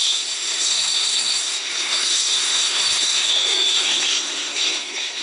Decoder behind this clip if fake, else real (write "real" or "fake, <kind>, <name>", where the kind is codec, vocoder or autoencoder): fake, codec, SNAC